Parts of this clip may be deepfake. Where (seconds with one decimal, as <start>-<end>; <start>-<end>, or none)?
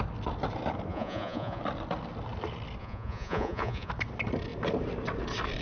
0.9-1.6; 2.8-3.9